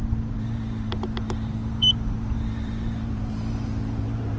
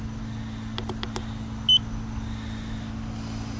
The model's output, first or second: first